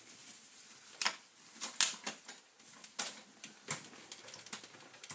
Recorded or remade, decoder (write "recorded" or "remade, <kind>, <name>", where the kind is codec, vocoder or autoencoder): recorded